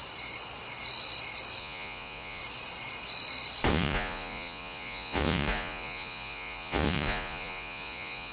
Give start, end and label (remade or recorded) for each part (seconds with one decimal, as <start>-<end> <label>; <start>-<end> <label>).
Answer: 0.0-1.6 recorded; 1.6-2.4 remade; 2.4-3.7 recorded; 3.7-8.3 remade